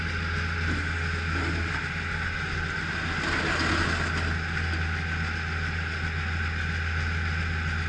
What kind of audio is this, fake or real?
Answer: real